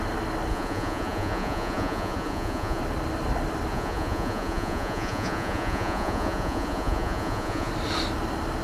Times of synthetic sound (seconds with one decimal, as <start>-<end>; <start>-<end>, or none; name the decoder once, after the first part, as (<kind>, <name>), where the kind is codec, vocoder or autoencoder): 0.5-2.8 (vocoder, Vocos); 3.7-7.7